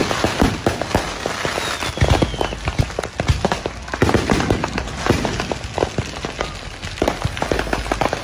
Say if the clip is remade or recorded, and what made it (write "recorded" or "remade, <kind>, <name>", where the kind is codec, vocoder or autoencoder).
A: recorded